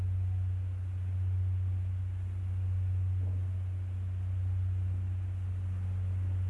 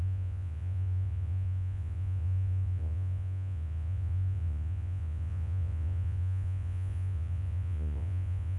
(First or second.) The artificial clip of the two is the second